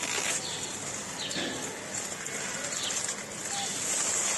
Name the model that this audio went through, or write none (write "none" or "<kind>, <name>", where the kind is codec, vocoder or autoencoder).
none